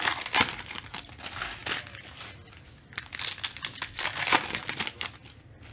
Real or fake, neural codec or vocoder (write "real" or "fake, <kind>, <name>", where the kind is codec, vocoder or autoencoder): real